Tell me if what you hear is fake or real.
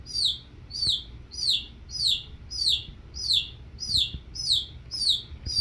real